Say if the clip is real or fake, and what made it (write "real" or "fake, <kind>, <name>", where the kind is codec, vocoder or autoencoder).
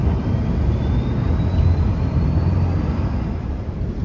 fake, vocoder, BigVGAN v2